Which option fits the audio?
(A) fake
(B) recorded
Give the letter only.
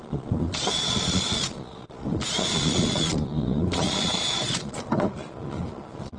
A